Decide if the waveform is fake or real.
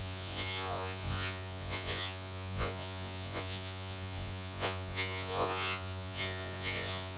fake